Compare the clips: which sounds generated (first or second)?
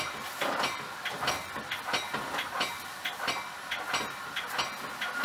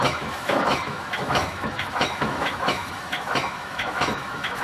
second